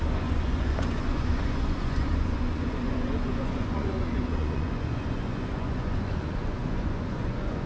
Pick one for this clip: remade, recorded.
remade